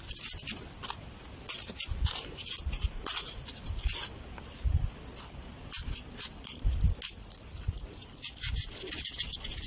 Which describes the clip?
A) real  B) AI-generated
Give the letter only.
A